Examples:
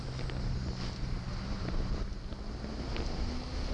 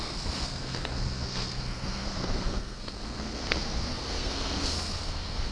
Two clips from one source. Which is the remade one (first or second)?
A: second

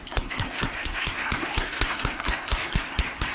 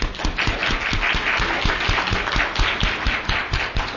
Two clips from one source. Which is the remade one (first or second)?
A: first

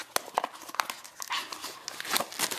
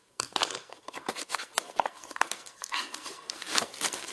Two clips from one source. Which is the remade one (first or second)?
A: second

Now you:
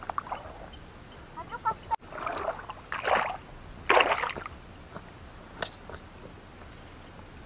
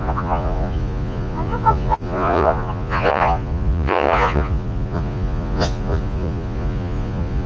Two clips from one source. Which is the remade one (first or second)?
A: second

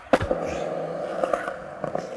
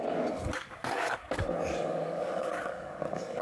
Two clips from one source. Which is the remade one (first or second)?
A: second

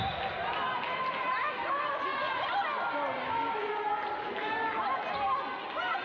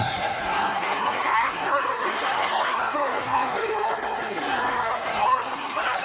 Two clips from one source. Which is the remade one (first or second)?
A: second